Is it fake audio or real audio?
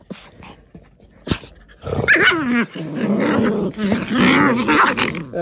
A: real